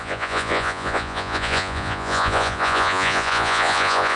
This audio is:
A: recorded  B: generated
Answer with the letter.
B